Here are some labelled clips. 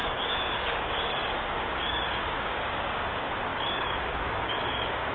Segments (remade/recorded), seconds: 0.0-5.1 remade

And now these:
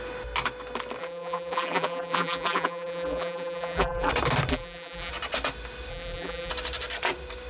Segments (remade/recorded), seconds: 0.0-1.0 recorded; 1.0-4.1 remade; 4.1-4.5 recorded; 4.5-5.1 remade; 5.1-5.9 recorded; 5.9-6.5 remade; 6.5-7.5 recorded

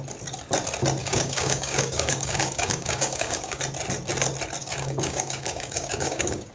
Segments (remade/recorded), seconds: 0.0-1.0 recorded; 1.0-3.6 remade; 3.6-4.6 recorded; 4.6-6.5 remade

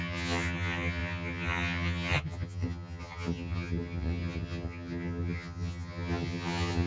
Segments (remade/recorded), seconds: 0.0-6.9 remade

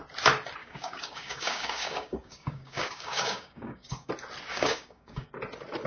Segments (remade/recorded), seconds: 0.0-0.6 recorded; 0.6-4.1 remade; 4.1-4.5 recorded; 4.5-5.3 remade; 5.3-5.9 recorded

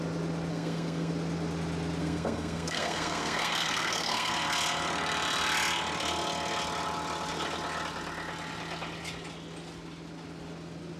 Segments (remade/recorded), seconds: 0.0-0.5 recorded; 0.5-1.1 remade; 1.1-2.0 recorded; 2.0-4.3 remade; 4.3-11.0 recorded